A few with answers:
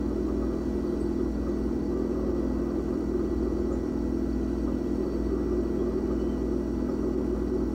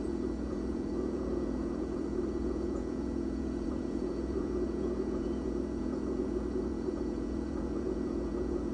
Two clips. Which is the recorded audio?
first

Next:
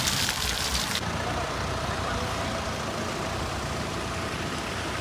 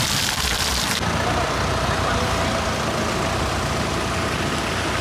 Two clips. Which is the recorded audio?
second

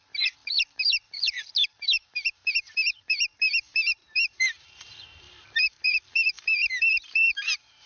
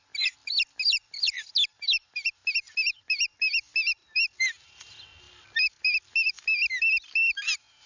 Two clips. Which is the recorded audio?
second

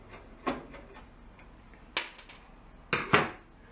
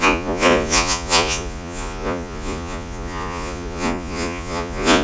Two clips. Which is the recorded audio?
first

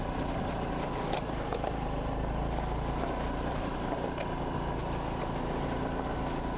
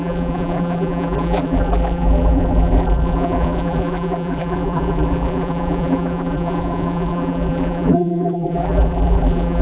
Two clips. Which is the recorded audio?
first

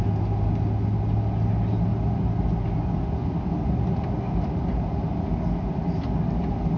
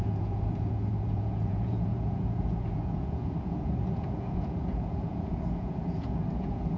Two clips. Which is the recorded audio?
first